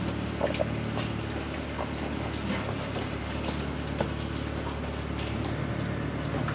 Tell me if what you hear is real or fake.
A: real